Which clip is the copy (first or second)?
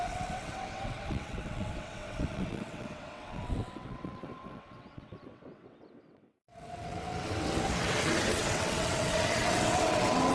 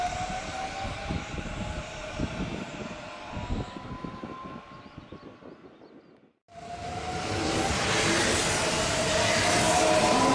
first